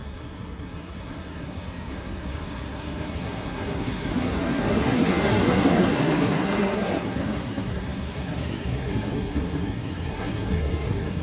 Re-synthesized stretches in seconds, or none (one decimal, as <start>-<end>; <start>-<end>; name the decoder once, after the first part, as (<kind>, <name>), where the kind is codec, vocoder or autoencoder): 0.0-11.2 (codec, SNAC)

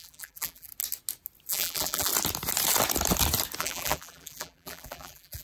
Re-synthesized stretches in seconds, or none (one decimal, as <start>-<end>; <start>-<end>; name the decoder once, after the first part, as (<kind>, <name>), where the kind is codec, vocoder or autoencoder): 0.0-0.7 (vocoder, BigVGAN v2); 1.5-2.1; 3.6-5.4